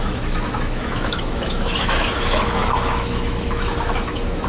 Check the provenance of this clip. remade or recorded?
remade